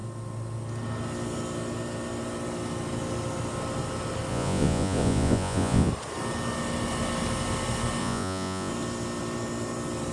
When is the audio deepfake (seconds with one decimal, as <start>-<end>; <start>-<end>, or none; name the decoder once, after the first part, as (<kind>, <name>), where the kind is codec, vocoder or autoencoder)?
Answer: 4.3-5.9 (vocoder, Vocos); 8.0-8.7